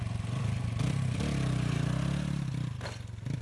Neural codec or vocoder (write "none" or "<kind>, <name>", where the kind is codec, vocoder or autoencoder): none